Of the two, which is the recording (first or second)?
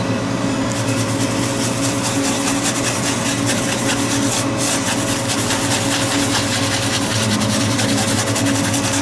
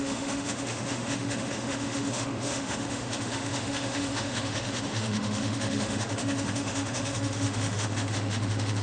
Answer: first